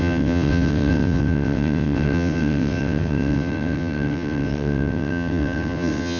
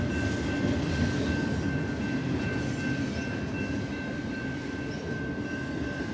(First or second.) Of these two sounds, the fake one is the first